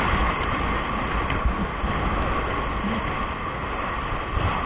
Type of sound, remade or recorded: recorded